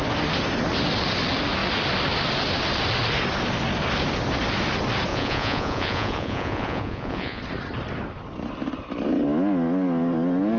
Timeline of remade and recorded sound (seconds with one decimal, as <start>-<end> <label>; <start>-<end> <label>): 0.0-5.1 recorded; 5.1-7.4 remade; 7.4-10.6 recorded